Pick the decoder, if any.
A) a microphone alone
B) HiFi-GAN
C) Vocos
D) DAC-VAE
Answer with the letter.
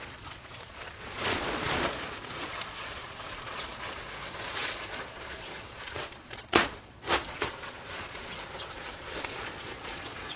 C